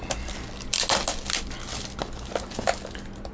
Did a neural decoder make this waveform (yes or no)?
no